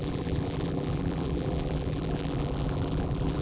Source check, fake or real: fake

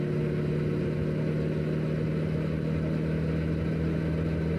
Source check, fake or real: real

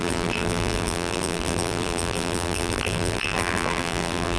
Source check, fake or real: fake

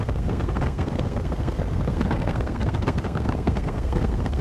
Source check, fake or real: fake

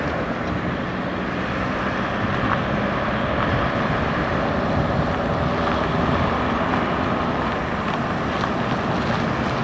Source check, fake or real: real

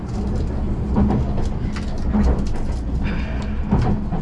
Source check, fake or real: real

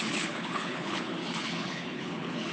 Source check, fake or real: fake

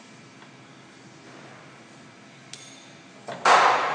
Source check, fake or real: real